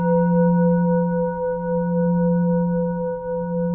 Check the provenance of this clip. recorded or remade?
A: recorded